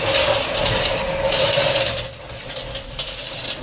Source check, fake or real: real